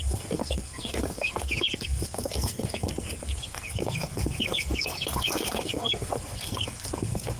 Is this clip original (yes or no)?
no